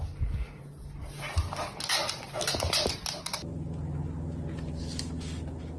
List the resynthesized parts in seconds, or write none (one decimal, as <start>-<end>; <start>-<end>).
none

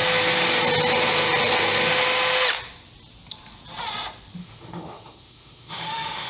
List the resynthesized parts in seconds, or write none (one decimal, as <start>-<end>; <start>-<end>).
4.4-6.3

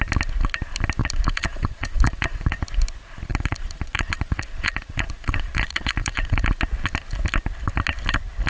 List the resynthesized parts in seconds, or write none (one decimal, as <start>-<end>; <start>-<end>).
1.0-2.6; 3.3-6.5

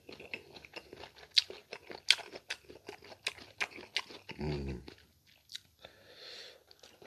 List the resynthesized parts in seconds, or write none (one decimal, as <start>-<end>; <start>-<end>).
none

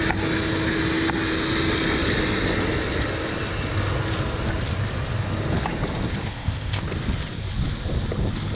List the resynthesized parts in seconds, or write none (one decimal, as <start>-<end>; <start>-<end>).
6.3-6.8